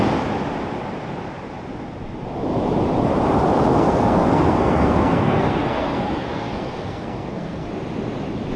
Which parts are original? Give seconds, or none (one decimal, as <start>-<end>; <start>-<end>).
0.0-3.7; 7.7-8.6